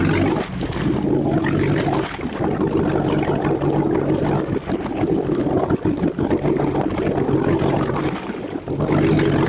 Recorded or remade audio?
recorded